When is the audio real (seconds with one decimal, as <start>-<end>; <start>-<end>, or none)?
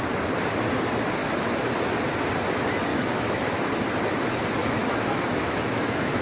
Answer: 0.0-1.2; 1.7-2.9; 3.6-4.6